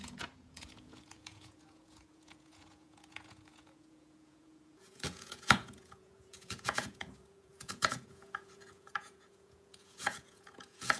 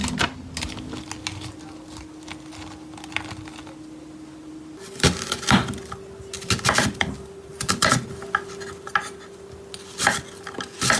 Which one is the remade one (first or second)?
first